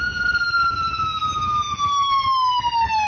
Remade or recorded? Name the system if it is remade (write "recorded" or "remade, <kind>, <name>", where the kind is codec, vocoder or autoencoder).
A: recorded